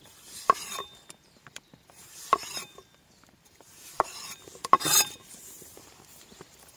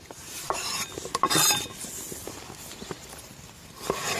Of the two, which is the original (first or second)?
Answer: second